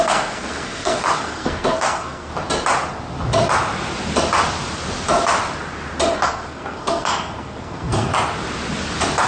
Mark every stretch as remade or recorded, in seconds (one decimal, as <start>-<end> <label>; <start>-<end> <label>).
0.0-2.3 remade; 2.3-6.3 recorded; 6.3-8.1 remade; 8.1-9.3 recorded